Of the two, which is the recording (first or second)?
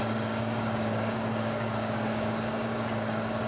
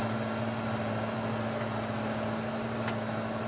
second